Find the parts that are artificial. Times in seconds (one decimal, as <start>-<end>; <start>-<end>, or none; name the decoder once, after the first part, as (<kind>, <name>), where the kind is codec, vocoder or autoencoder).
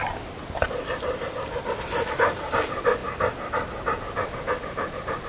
none